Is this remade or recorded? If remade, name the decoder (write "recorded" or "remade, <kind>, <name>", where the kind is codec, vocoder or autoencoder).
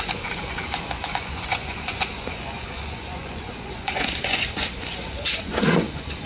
remade, vocoder, Vocos